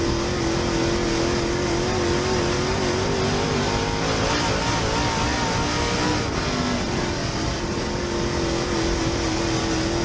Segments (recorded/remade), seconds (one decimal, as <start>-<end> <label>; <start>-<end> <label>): 0.0-10.0 recorded